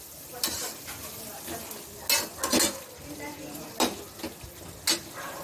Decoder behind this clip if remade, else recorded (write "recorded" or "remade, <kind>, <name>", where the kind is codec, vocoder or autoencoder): recorded